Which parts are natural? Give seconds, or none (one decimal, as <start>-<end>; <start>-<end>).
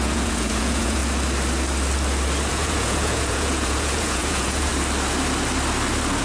1.0-2.5; 4.7-6.2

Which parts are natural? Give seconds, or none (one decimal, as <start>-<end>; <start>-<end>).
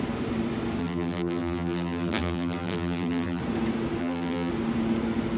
0.0-0.8; 3.4-4.0; 4.5-5.4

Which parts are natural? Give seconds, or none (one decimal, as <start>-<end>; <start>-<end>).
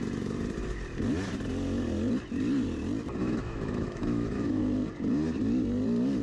0.0-3.2; 4.6-6.2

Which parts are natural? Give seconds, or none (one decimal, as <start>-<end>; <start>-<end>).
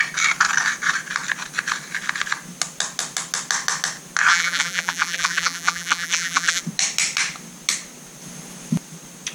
0.0-4.3; 6.6-9.3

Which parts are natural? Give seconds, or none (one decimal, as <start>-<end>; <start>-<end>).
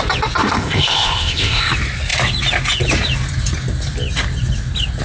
0.0-0.4; 1.7-5.0